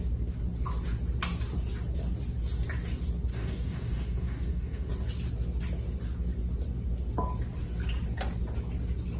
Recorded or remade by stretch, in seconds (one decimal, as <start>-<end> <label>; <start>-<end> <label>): 0.0-3.3 recorded; 3.3-4.9 remade; 4.9-9.2 recorded